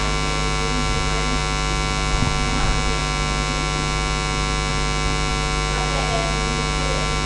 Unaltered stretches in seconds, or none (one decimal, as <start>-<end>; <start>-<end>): 0.0-7.3